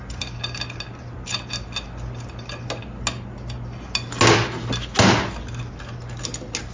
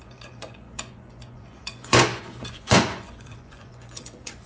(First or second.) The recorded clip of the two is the first